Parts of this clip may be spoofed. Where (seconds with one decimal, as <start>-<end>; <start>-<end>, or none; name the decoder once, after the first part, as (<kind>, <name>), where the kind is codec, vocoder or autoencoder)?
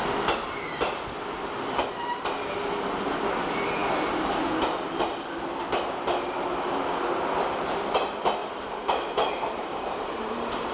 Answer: 8.4-10.7 (vocoder, BigVGAN v2)